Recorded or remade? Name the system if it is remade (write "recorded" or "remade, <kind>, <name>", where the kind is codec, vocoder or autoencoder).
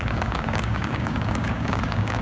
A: remade, codec, DAC